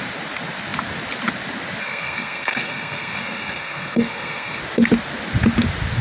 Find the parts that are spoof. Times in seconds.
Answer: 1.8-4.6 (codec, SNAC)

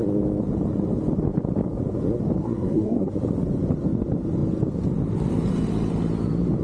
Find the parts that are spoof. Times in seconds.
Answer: 2.4-3.1 (codec, SNAC)